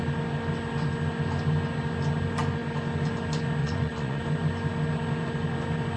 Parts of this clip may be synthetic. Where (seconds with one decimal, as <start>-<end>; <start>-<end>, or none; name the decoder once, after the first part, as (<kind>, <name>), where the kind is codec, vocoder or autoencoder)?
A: 3.6-4.2 (vocoder, Vocos)